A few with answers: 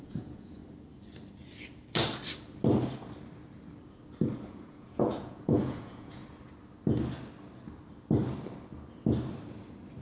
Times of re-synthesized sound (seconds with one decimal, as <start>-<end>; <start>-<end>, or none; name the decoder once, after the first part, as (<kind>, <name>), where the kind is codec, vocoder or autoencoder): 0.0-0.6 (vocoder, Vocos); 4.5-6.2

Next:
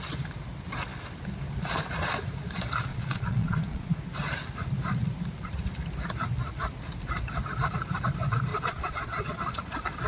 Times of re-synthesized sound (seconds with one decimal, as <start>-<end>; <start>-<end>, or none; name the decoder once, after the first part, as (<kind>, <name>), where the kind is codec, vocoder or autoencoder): 2.9-4.0 (vocoder, Vocos); 8.5-9.6

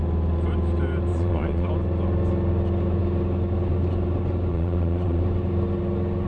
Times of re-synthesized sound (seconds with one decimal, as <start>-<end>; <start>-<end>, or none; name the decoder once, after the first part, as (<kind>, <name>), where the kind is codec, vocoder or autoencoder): 1.1-1.7 (vocoder, Vocos); 4.5-5.2

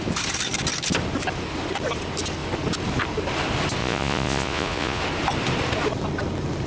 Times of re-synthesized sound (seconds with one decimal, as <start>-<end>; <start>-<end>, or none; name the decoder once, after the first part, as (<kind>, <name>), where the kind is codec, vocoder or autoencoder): 3.8-5.0 (vocoder, Vocos)

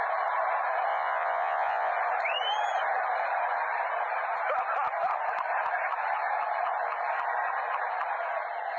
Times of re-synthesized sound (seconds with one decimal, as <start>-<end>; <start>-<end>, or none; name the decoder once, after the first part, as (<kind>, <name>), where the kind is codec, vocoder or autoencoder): 0.9-1.9 (vocoder, Vocos)

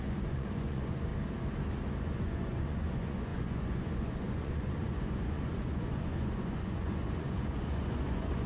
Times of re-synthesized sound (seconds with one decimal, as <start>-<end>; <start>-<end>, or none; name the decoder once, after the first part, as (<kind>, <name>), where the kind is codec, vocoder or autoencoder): 0.0-1.1 (vocoder, Vocos); 2.0-8.5